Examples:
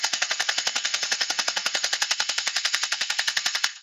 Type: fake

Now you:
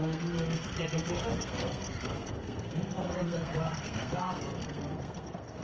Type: fake